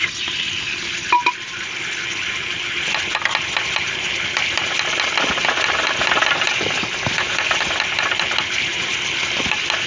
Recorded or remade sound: recorded